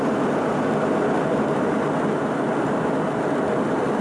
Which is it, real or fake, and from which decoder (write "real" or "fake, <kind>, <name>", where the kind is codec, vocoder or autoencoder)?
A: fake, vocoder, BigVGAN v2